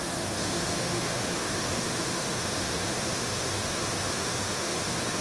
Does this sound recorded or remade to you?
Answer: remade